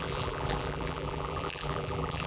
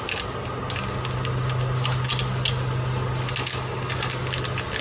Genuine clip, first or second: second